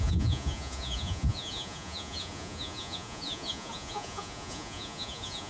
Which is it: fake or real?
fake